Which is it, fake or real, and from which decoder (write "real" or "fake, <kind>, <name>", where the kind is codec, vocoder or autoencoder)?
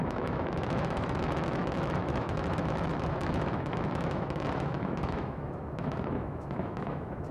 fake, autoencoder, DAC-VAE